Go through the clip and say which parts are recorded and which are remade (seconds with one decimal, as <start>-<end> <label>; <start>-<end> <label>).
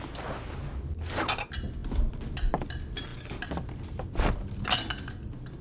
0.0-5.6 recorded